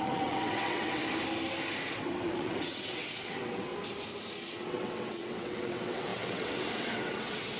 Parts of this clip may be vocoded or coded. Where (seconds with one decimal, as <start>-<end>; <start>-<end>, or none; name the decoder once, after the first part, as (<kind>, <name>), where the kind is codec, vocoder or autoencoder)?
0.0-1.0 (vocoder, WaveNeXt); 1.9-3.7; 4.5-7.6